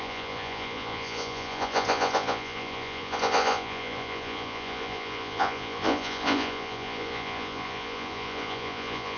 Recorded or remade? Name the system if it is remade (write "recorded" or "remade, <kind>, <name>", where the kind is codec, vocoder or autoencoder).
remade, vocoder, Vocos